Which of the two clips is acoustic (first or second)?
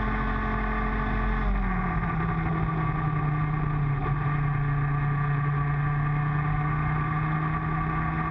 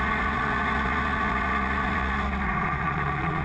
first